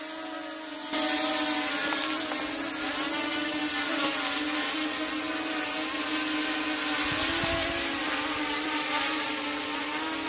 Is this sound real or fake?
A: real